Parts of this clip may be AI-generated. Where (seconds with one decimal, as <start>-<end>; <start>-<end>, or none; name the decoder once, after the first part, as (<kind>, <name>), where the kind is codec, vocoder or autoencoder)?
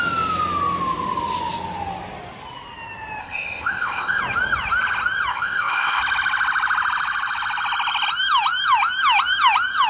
3.2-4.2 (codec, ZipCodec); 5.3-6.0